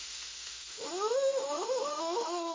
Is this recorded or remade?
remade